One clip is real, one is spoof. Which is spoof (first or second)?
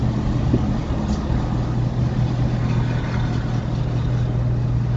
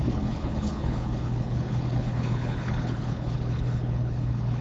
second